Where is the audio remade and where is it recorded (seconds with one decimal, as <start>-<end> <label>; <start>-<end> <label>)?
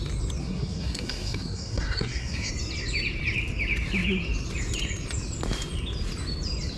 0.0-0.4 recorded; 0.4-2.5 remade; 2.5-6.8 recorded